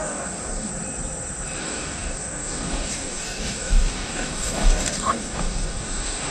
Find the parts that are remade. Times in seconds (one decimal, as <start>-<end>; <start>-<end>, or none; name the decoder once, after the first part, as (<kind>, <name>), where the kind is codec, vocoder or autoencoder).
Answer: 0.0-0.7 (codec, DAC); 1.6-6.3